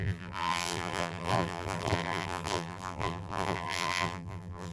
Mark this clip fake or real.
fake